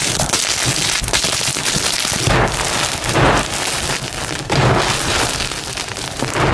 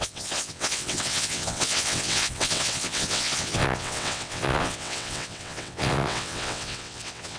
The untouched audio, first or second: first